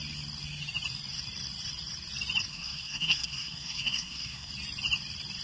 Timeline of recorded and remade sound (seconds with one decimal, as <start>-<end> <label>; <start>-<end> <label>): 0.0-2.5 recorded; 2.5-4.5 remade; 4.5-5.4 recorded